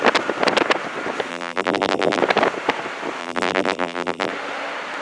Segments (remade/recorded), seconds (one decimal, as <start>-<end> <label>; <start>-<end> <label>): 0.0-1.3 recorded; 1.3-2.2 remade; 2.2-3.2 recorded; 3.2-4.3 remade; 4.3-5.0 recorded